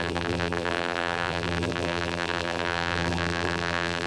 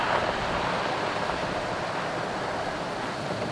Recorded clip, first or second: second